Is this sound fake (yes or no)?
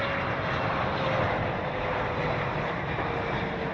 no